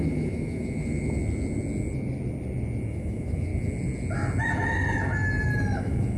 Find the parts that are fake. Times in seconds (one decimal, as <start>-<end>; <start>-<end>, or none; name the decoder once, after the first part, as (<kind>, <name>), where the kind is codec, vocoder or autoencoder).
0.0-1.2 (autoencoder, DAC-VAE); 2.9-3.5; 5.8-6.2